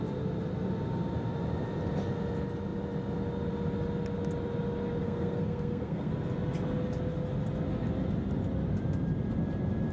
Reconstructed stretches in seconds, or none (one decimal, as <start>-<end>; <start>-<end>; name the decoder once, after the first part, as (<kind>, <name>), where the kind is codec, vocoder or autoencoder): 5.0-6.1 (codec, SNAC)